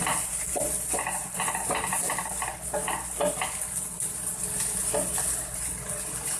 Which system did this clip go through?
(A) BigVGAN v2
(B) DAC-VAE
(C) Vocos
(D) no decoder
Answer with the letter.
A